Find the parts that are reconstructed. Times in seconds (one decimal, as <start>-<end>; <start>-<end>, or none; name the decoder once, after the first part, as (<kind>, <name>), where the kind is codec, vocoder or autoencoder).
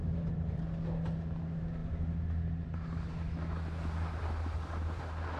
0.0-0.6 (vocoder, BigVGAN v2)